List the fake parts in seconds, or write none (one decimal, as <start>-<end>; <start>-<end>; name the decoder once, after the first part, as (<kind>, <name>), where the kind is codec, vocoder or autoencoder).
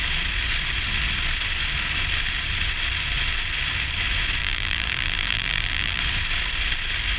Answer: 4.4-6.0 (vocoder, BigVGAN v2)